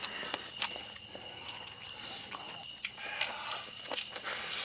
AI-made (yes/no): no